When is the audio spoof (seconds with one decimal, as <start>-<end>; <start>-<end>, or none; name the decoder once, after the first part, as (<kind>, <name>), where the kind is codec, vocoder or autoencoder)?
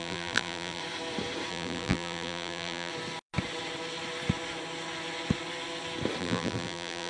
0.0-0.8 (vocoder, BigVGAN v2); 1.5-2.9; 6.2-7.1